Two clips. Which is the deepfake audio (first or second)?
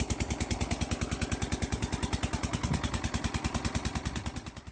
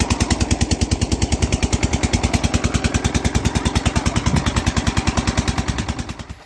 first